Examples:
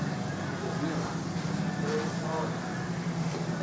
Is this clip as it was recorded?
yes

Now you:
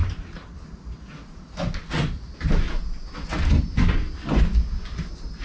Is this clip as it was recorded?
yes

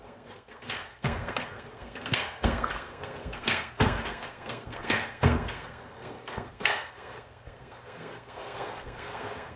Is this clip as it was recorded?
no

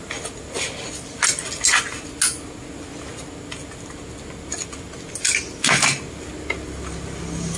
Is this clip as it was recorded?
yes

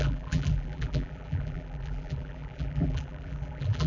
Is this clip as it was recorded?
no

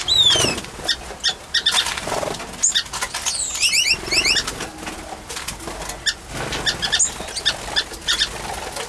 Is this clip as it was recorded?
yes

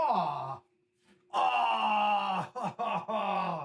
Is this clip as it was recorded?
yes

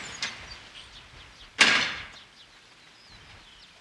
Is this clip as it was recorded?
yes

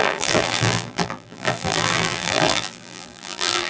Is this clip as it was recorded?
no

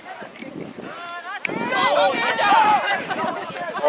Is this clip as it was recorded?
no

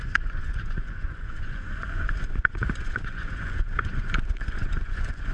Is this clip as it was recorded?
no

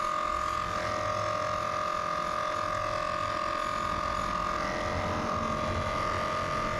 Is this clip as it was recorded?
yes